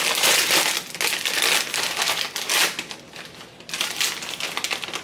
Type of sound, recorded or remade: recorded